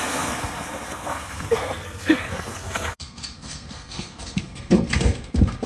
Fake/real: fake